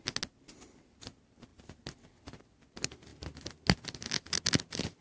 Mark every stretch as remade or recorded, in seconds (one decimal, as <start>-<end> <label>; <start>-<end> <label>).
0.0-5.0 recorded